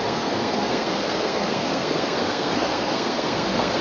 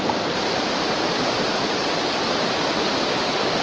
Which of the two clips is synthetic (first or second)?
first